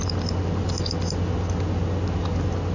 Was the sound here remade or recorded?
recorded